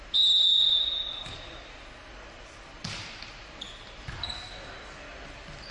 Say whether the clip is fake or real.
real